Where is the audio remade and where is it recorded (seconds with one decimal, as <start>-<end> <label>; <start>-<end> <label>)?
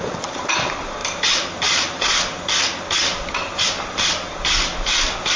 0.0-3.0 recorded; 3.0-4.6 remade; 4.6-5.4 recorded